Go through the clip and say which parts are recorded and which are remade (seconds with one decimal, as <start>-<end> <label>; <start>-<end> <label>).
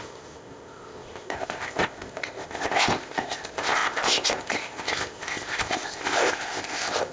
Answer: 0.0-7.1 remade